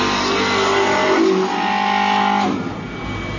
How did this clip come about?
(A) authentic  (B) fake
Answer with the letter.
A